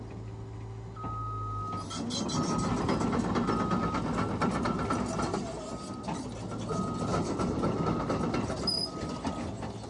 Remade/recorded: recorded